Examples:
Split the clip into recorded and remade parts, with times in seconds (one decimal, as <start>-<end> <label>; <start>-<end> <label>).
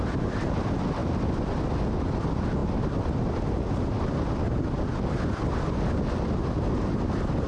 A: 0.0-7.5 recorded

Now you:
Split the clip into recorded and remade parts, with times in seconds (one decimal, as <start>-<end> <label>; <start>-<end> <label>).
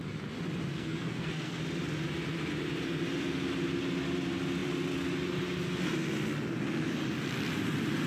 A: 0.0-0.7 recorded; 0.7-1.6 remade; 1.6-8.1 recorded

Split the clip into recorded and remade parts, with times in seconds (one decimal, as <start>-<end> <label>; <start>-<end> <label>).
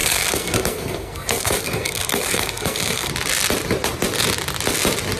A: 0.0-3.1 remade; 3.1-5.2 recorded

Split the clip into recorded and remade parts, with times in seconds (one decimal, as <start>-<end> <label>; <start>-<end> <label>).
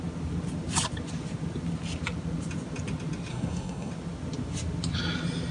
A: 0.0-3.3 recorded; 3.3-3.9 remade; 3.9-5.5 recorded